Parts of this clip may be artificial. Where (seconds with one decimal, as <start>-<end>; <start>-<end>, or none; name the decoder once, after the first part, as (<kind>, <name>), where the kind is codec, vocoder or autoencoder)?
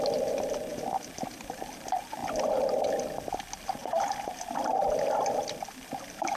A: 0.7-1.6 (vocoder, BigVGAN v2); 2.2-3.3; 3.8-6.4